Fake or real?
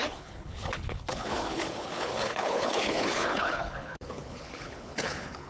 fake